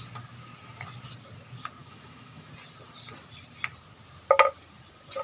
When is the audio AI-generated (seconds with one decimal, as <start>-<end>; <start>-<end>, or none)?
1.8-2.5